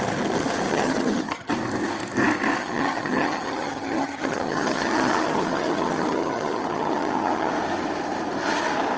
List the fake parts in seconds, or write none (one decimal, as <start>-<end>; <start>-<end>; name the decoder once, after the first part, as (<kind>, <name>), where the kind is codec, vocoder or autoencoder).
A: 0.7-1.5 (vocoder, HiFi-GAN); 2.6-7.5